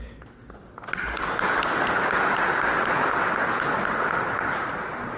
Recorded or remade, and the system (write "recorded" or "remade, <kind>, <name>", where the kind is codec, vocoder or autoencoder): recorded